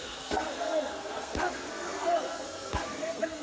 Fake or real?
fake